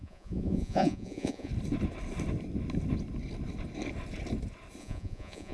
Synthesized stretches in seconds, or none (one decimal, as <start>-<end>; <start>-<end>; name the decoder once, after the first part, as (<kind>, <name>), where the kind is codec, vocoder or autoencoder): 0.0-1.5 (vocoder, Vocos); 4.8-5.5